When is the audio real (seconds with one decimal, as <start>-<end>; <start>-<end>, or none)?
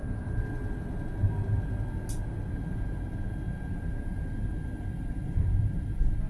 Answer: 0.0-3.8